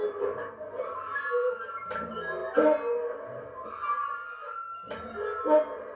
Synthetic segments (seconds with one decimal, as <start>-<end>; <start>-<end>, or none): none